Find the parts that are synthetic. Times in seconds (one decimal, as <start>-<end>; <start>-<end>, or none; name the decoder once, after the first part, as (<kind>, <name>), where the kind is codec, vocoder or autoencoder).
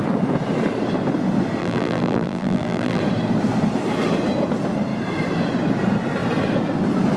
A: 1.6-3.0 (vocoder, BigVGAN v2)